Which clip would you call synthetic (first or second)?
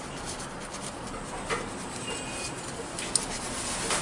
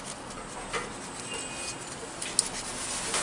first